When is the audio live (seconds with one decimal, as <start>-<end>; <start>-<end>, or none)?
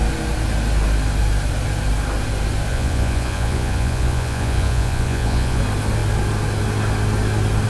0.0-2.7; 5.6-7.7